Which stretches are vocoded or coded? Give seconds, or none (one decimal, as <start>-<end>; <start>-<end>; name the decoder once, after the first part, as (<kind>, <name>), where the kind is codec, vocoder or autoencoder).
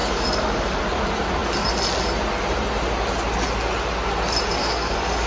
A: 0.0-0.8 (codec, DAC); 4.6-5.3